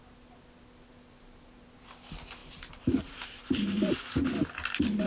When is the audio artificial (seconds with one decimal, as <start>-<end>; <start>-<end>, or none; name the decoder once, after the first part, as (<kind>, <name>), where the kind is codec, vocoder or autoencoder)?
2.4-3.0 (vocoder, BigVGAN v2)